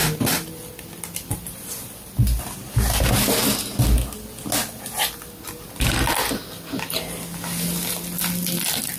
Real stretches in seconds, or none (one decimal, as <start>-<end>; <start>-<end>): 0.0-9.0